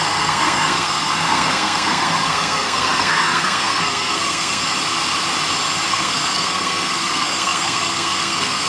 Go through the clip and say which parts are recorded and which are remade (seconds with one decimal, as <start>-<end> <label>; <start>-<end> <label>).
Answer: 0.0-4.6 remade; 4.6-5.9 recorded; 5.9-8.7 remade